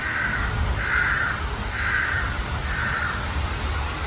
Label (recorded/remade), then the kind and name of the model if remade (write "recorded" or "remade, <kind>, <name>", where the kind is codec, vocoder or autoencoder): recorded